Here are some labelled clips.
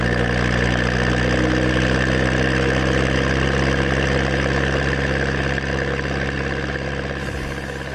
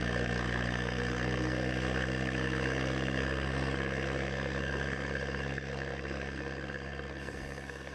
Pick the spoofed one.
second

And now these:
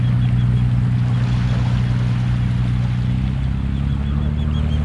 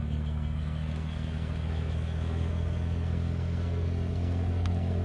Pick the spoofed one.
second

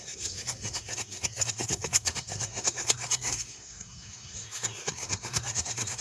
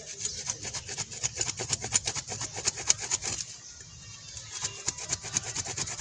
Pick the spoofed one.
first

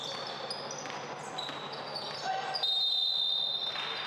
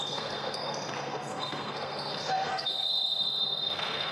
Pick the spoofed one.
second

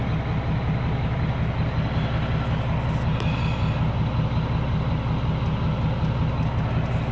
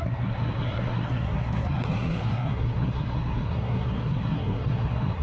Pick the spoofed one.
second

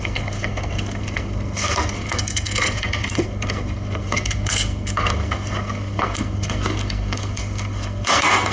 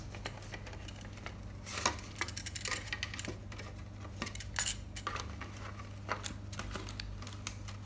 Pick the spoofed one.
first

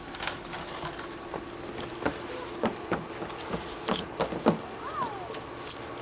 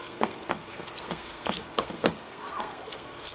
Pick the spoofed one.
second